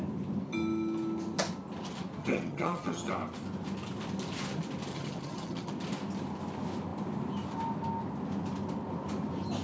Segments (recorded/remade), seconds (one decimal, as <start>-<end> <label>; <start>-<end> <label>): 0.0-2.2 recorded; 2.2-3.1 remade; 3.1-4.9 recorded; 4.9-5.7 remade; 5.7-9.6 recorded